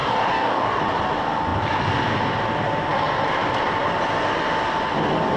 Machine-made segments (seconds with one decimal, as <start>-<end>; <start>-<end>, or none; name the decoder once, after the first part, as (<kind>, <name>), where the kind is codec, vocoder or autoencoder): 0.0-0.8 (codec, DAC)